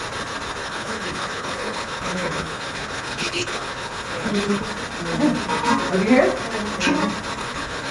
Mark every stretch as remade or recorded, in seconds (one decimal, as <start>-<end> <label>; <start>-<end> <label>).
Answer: 0.0-0.6 recorded; 0.6-4.7 remade; 4.7-7.4 recorded; 7.4-7.9 remade